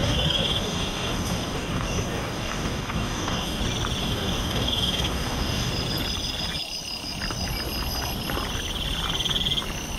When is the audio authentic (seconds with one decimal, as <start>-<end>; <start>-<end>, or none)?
3.6-4.0; 5.7-10.0